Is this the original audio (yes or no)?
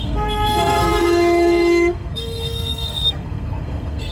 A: no